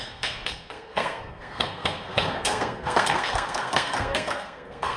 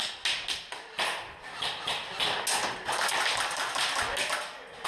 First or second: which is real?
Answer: second